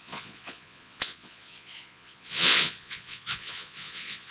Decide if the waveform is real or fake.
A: fake